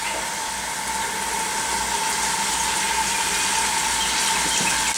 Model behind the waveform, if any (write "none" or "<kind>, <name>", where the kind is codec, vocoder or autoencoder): none